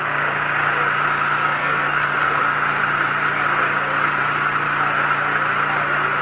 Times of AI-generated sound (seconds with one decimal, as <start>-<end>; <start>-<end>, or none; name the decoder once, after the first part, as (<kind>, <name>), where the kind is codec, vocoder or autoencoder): 1.6-2.4 (codec, SNAC)